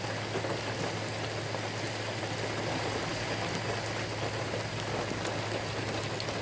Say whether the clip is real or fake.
real